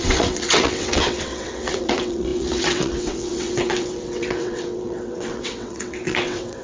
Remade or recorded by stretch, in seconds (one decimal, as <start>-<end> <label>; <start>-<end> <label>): 0.0-6.6 remade